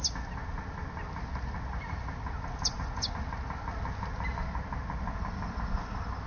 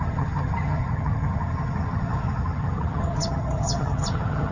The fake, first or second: second